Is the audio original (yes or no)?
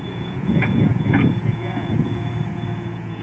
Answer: no